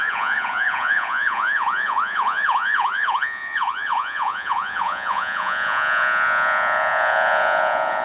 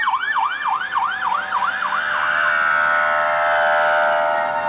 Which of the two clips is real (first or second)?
second